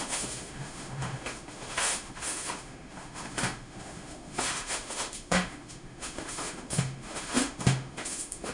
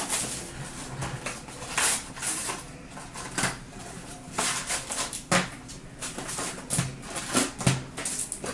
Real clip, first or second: second